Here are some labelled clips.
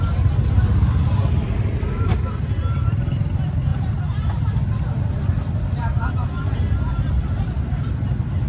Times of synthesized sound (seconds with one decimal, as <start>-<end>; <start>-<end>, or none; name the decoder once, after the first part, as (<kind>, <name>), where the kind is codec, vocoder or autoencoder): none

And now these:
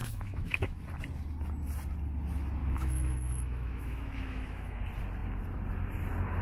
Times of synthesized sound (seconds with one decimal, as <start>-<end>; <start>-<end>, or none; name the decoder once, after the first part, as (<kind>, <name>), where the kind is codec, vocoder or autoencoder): 0.0-0.8 (autoencoder, DAC-VAE); 2.6-4.8

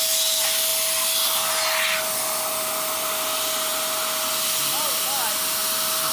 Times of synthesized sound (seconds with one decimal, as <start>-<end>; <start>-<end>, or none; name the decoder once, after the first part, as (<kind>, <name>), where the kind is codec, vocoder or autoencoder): none